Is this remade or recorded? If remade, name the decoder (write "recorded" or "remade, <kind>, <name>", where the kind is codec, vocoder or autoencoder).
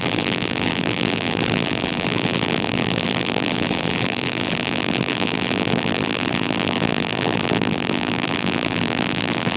remade, vocoder, BigVGAN v2